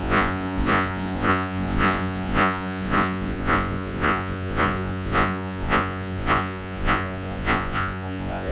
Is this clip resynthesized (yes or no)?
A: yes